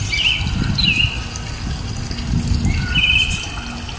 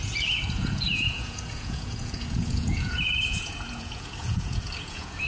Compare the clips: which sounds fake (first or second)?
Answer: second